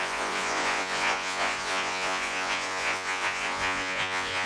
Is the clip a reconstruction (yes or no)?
yes